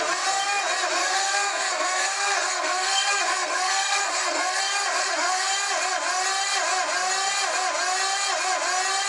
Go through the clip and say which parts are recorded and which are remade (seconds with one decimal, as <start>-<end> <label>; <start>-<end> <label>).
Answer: 0.0-1.0 recorded; 1.0-4.6 remade; 4.6-5.0 recorded; 5.0-5.5 remade; 5.5-9.1 recorded